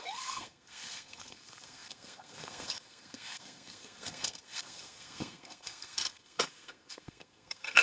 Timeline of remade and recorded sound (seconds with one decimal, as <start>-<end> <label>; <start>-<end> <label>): 0.0-7.8 remade